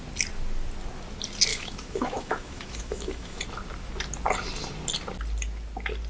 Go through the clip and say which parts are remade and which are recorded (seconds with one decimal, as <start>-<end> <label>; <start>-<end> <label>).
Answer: 0.0-1.5 recorded; 1.5-3.4 remade; 3.4-6.1 recorded